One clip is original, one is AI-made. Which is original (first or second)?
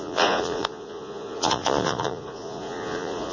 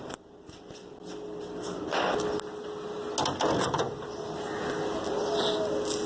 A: second